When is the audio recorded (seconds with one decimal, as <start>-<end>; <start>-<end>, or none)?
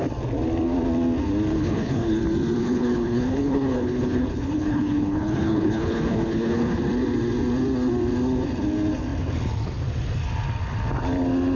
0.0-1.5; 2.2-2.6; 6.8-11.6